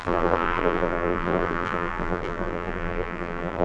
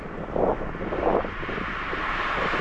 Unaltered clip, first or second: second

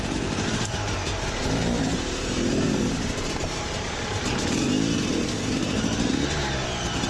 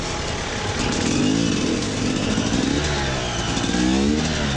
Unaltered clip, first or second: second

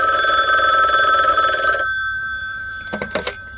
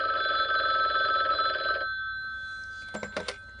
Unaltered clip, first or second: second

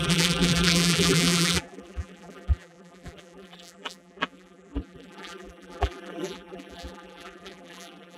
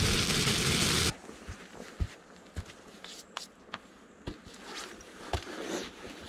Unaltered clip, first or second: second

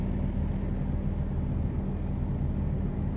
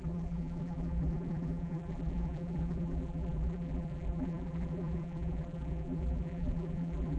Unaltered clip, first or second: first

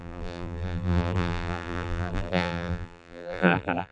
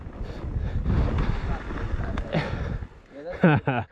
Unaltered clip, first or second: second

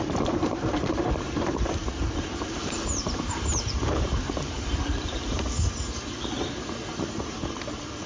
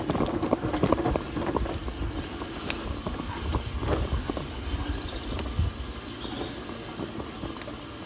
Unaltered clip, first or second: second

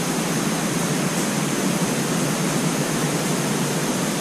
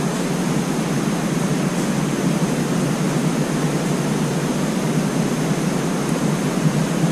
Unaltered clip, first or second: second